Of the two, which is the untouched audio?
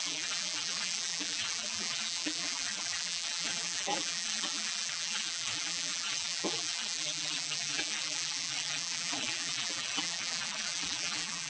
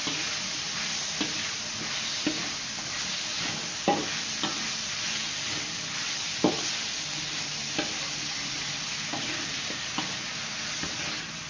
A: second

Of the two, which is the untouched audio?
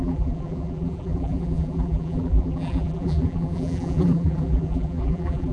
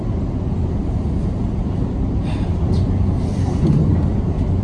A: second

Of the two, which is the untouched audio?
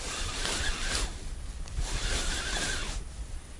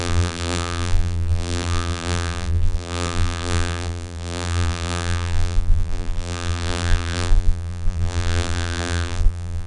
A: first